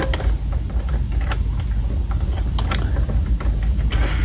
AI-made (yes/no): no